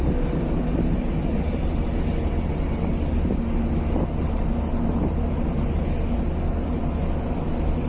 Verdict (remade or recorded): recorded